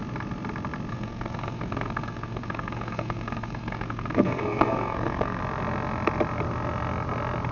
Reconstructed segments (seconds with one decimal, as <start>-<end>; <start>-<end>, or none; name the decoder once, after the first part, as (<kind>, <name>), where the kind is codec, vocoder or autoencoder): 0.9-5.4 (codec, SNAC)

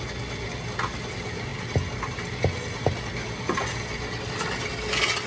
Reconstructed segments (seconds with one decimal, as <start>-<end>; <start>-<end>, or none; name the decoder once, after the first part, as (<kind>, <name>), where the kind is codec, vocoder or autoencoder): none

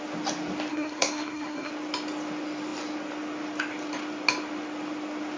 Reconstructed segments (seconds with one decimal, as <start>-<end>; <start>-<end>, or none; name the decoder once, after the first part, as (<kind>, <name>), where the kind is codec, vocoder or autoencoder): 0.7-1.7 (codec, SNAC)

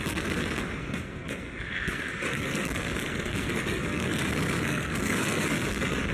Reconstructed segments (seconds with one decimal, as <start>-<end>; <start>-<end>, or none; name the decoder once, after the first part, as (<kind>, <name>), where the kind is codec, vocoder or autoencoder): 0.0-6.1 (codec, SNAC)

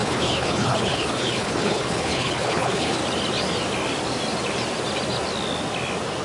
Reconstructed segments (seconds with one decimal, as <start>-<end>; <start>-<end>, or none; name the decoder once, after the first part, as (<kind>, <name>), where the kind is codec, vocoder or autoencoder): 0.0-3.0 (codec, HILCodec)